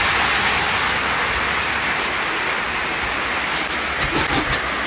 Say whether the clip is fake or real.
real